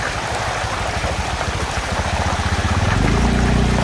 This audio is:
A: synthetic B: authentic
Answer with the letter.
B